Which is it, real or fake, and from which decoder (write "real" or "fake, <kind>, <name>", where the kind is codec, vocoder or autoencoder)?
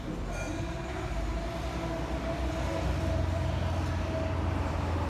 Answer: real